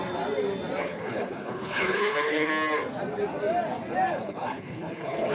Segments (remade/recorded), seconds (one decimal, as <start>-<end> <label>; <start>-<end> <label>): 0.0-0.8 recorded; 0.8-2.5 remade; 2.5-4.1 recorded; 4.1-5.3 remade

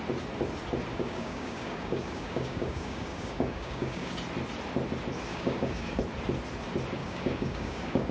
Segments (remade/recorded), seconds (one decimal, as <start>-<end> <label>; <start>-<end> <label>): 0.0-0.9 recorded; 0.9-4.1 remade; 4.1-5.3 recorded; 5.3-6.0 remade; 6.0-7.0 recorded; 7.0-8.1 remade